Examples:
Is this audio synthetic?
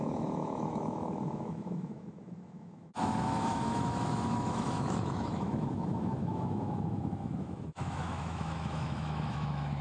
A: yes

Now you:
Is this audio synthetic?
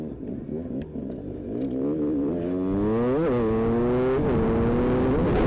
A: no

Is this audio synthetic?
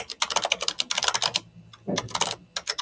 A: no